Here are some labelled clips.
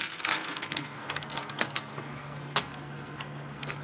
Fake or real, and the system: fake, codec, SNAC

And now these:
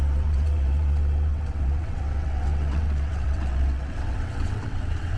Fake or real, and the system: fake, vocoder, WaveNeXt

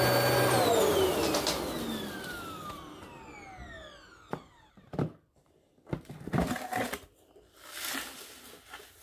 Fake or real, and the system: real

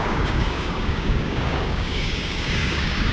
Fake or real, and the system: fake, codec, DAC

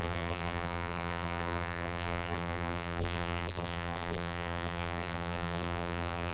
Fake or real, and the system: fake, vocoder, BigVGAN v2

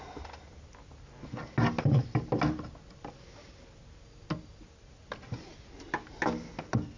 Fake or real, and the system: real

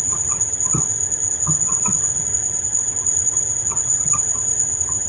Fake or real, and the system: fake, vocoder, HiFi-GAN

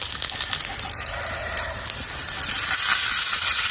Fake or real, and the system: real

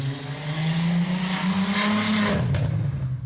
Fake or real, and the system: real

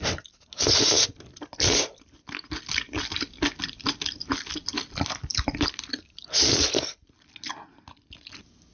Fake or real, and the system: real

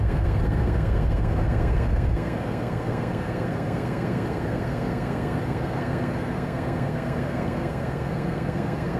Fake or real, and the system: fake, codec, SNAC